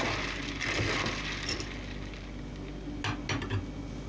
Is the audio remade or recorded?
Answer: recorded